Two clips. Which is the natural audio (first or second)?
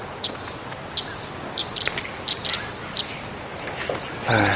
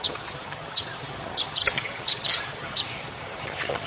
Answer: first